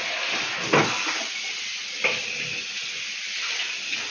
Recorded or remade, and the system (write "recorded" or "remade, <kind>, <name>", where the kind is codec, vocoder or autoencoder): recorded